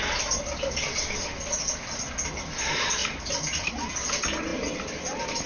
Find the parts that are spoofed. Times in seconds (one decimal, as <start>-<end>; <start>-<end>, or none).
3.0-3.7